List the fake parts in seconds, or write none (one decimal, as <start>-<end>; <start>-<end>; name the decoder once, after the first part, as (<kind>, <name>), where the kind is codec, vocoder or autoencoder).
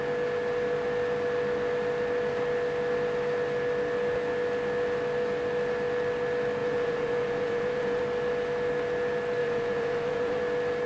6.6-8.0 (vocoder, Vocos); 9.4-10.4